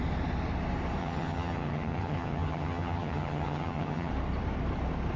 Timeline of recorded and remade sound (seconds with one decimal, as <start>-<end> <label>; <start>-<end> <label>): 0.0-1.0 recorded; 1.0-4.1 remade; 4.1-5.2 recorded